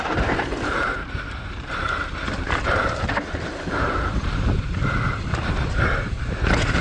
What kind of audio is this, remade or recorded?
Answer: remade